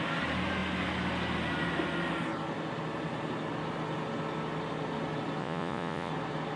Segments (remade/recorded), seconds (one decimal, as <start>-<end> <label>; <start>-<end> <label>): 0.0-5.4 recorded; 5.4-6.1 remade; 6.1-6.6 recorded